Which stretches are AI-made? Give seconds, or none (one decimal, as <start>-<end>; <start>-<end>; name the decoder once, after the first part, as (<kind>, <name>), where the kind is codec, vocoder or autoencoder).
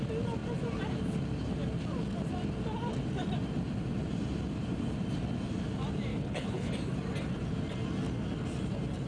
6.1-6.7 (codec, HILCodec)